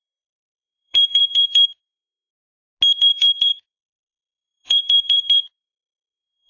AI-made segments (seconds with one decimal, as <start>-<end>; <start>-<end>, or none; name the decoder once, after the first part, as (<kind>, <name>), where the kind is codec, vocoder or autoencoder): 0.0-2.3 (codec, SNAC); 3.0-6.5

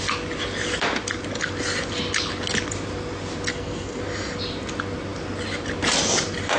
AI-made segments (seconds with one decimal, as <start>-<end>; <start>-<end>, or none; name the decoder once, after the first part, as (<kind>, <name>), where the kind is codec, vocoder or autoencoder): 3.5-4.0 (codec, SNAC)

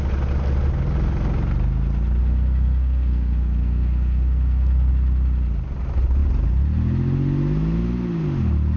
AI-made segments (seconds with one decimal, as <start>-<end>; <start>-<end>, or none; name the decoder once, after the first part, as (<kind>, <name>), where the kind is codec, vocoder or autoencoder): 2.2-4.9 (codec, SNAC)

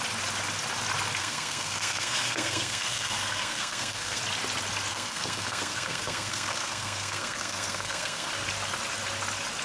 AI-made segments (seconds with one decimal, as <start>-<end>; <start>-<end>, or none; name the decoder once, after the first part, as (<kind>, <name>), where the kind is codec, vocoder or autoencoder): 1.2-4.2 (codec, SNAC); 4.9-8.3

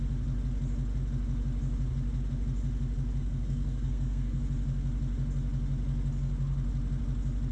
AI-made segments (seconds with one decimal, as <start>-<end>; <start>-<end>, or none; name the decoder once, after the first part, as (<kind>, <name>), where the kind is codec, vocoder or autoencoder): 3.2-4.4 (codec, SNAC)

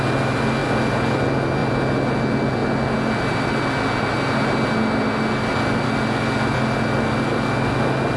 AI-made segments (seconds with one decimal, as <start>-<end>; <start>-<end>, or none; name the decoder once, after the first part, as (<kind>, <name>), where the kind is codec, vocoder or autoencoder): none

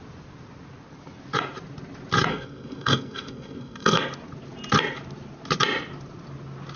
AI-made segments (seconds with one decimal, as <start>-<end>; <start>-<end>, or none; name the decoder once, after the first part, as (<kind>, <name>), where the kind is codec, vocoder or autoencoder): 2.3-4.0 (codec, SNAC)